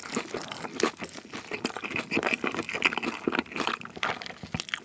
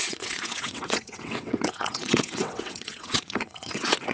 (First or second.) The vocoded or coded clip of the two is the second